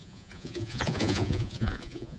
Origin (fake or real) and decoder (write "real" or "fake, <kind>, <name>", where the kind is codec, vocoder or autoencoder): fake, vocoder, Vocos